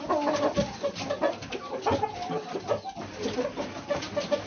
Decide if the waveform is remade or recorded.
recorded